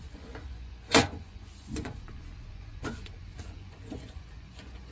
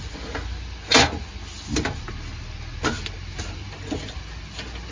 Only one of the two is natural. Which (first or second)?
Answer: second